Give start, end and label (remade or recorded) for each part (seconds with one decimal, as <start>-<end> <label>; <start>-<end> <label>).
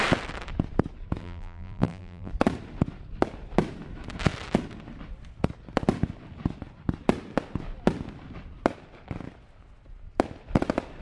0.0-1.2 recorded; 1.2-2.3 remade; 2.3-11.0 recorded